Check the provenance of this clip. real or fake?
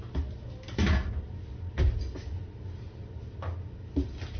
real